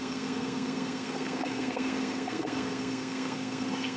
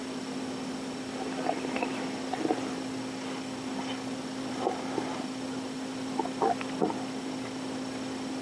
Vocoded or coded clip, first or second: first